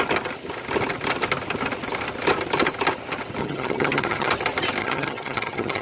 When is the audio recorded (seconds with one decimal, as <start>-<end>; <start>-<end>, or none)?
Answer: 0.0-3.4; 4.3-4.8